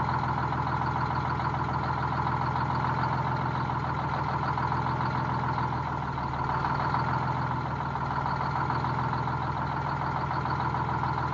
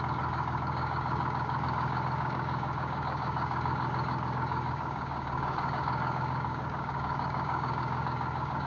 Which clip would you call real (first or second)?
first